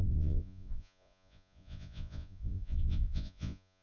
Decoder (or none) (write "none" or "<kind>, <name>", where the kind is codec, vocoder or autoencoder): vocoder, Vocos